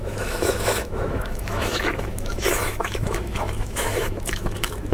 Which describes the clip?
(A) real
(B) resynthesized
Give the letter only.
B